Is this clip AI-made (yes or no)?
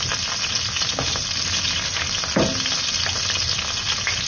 no